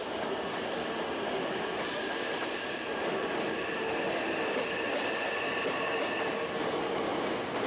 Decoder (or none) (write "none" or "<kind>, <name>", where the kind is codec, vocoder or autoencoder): none